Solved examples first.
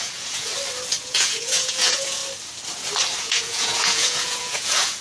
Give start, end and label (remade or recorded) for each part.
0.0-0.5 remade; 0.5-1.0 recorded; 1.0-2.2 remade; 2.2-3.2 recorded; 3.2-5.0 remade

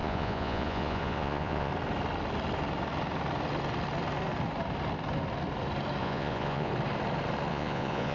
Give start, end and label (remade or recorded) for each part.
0.0-1.7 remade; 1.7-6.0 recorded; 6.0-6.7 remade; 6.7-7.5 recorded; 7.5-8.1 remade

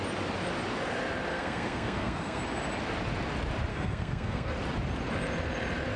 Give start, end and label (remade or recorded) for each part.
0.0-1.3 recorded; 1.3-2.4 remade; 2.4-3.7 recorded; 3.7-4.5 remade; 4.5-6.0 recorded

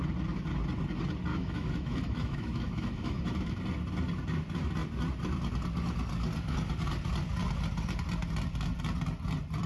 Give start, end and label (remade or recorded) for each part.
0.0-1.3 recorded; 1.3-3.6 remade; 3.6-9.7 recorded

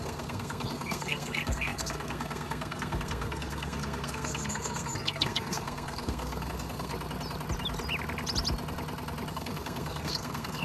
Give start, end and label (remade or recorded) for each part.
0.0-6.9 remade; 6.9-9.3 recorded; 9.3-10.6 remade